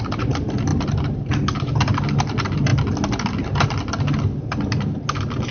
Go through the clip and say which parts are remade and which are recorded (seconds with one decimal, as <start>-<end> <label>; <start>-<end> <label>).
0.0-5.5 recorded